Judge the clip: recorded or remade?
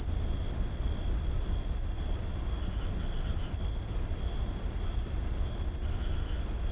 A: recorded